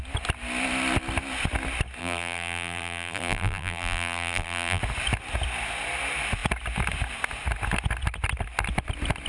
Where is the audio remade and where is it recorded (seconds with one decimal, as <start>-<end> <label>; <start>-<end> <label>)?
0.0-2.0 recorded; 2.0-4.8 remade; 4.8-9.3 recorded